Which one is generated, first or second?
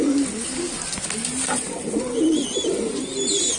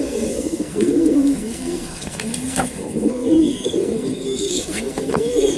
second